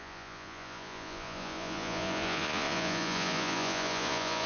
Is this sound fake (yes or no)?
yes